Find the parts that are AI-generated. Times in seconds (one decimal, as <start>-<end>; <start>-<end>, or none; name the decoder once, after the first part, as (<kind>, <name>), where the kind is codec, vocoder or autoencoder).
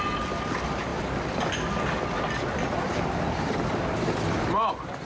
none